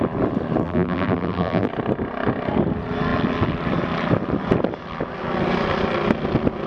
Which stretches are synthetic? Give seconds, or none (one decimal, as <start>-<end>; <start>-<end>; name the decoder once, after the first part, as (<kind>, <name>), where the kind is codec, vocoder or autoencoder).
0.6-1.7 (vocoder, BigVGAN v2)